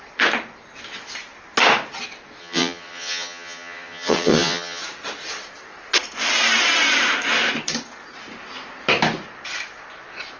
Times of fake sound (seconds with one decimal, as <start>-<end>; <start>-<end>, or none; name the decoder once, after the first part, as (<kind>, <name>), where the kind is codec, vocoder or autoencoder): 2.4-4.8 (vocoder, HiFi-GAN)